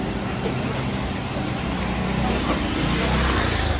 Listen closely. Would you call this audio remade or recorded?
recorded